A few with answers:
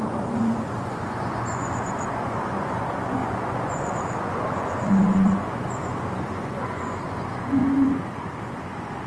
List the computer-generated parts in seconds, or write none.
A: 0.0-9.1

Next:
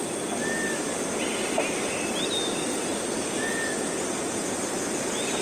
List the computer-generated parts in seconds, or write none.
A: 2.9-4.4

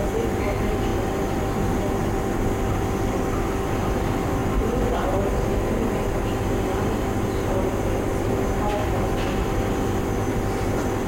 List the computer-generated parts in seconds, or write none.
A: none

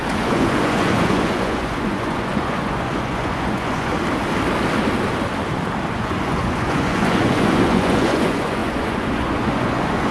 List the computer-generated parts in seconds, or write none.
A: 0.0-3.9; 5.9-10.1

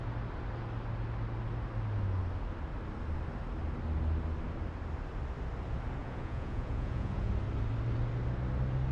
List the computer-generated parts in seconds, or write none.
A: 6.0-7.3

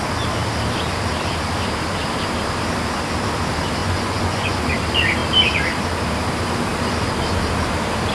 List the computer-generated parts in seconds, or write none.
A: 3.8-4.6

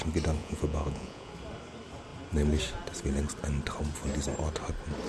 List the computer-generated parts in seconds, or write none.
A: 0.4-1.3

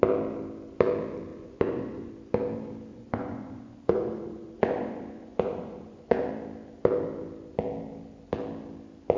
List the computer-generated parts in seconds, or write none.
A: 1.3-2.1; 2.9-6.3